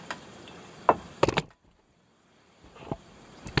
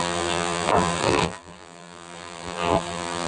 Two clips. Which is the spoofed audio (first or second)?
second